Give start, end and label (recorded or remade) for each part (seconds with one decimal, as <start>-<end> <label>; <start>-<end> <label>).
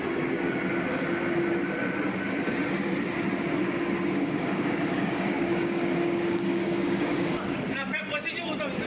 0.0-0.9 recorded; 0.9-1.5 remade; 1.5-4.2 recorded; 4.2-7.6 remade; 7.6-8.9 recorded